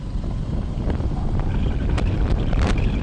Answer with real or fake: fake